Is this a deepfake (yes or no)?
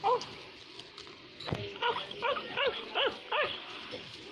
no